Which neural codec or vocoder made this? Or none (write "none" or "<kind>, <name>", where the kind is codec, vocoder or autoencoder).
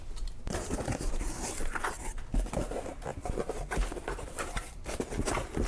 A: none